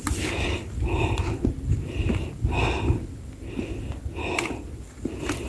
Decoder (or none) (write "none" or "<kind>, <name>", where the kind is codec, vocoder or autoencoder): none